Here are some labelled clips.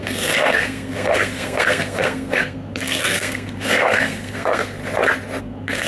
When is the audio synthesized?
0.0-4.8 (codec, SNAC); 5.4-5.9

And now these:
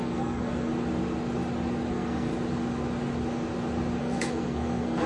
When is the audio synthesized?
0.0-0.7 (codec, SNAC); 1.9-2.3; 4.0-5.1

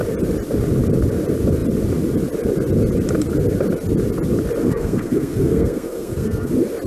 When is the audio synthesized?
4.6-6.5 (codec, SNAC)

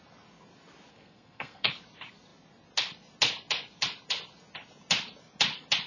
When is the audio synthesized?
0.9-1.7 (codec, SNAC)

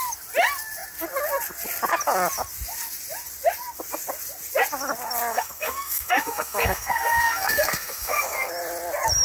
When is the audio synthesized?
5.3-8.5 (codec, SNAC)

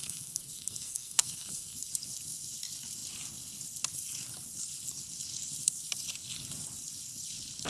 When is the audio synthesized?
0.0-1.9 (codec, SNAC)

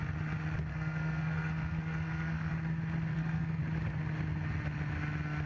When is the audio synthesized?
0.7-2.5 (codec, SNAC); 3.1-3.6